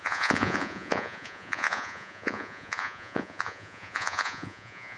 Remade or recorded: remade